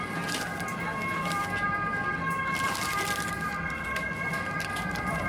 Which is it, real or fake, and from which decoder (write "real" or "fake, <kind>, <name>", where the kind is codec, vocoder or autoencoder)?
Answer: fake, vocoder, BigVGAN v2